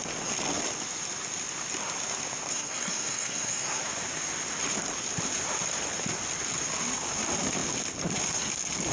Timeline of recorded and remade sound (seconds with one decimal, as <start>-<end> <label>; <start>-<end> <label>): 0.0-2.5 recorded; 2.5-3.8 remade; 3.8-8.9 recorded

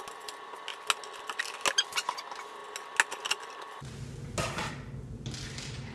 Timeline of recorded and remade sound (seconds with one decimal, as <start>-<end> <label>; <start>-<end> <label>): 0.0-5.9 recorded

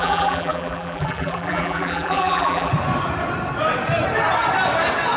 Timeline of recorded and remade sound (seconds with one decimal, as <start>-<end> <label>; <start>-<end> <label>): 0.0-2.7 remade; 2.7-5.2 recorded

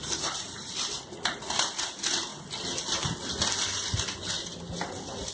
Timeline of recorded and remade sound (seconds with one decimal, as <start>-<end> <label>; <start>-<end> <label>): 0.0-5.3 recorded